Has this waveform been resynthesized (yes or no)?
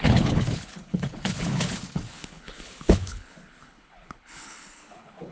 yes